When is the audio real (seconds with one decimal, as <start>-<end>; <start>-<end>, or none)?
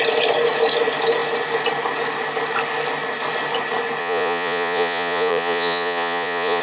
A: 0.0-4.0